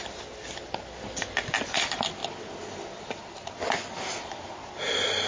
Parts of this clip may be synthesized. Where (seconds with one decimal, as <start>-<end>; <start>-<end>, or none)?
none